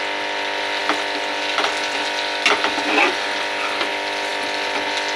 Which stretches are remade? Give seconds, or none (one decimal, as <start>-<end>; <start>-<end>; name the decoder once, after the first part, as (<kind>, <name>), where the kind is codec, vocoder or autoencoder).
none